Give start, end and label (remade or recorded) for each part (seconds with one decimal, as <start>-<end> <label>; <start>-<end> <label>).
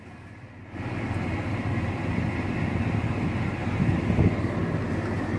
0.0-5.4 recorded